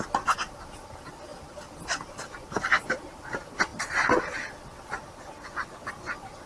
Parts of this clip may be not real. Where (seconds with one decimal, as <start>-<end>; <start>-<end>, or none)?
none